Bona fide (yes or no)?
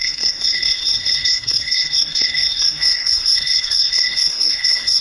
no